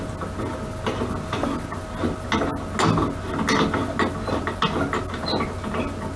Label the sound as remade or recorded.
recorded